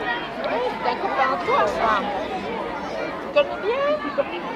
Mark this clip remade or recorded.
recorded